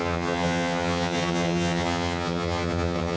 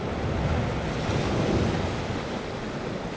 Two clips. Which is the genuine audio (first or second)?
second